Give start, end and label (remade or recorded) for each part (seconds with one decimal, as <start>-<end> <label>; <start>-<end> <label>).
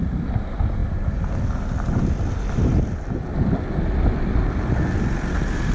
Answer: 0.0-5.7 recorded